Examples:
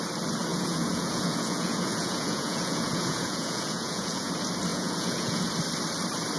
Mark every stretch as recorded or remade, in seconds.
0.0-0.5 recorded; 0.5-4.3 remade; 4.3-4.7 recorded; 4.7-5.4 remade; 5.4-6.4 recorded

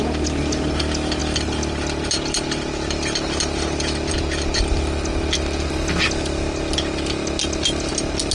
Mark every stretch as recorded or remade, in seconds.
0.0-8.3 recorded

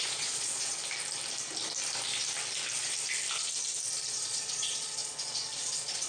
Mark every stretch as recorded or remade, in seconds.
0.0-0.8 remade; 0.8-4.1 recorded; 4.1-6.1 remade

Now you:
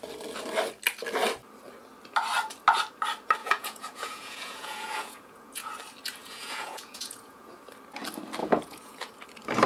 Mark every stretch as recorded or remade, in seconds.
0.0-3.4 recorded; 3.4-5.7 remade; 5.7-6.2 recorded; 6.2-7.5 remade; 7.5-8.4 recorded; 8.4-9.1 remade; 9.1-9.7 recorded